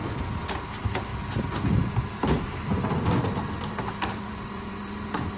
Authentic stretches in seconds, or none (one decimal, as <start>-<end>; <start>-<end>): 0.0-0.6; 1.1-1.9; 2.8-3.9